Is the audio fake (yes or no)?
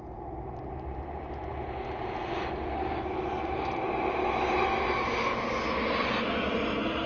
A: no